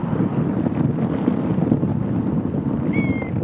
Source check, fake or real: real